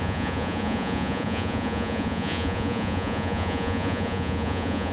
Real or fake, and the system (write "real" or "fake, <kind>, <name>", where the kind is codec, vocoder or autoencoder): fake, vocoder, Vocos